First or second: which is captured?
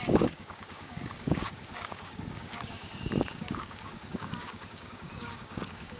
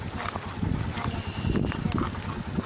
second